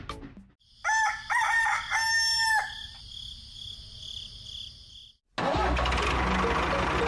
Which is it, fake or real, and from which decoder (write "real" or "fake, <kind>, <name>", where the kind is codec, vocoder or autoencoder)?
real